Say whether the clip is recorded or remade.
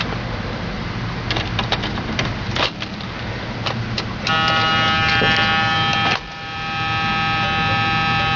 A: recorded